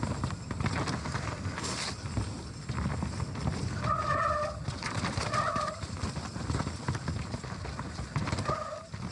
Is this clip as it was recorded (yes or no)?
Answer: yes